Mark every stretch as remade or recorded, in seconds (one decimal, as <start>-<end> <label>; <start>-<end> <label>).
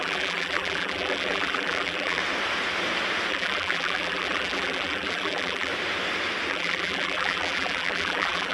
0.0-2.2 remade; 2.2-3.3 recorded; 3.3-5.7 remade; 5.7-6.5 recorded; 6.5-8.5 remade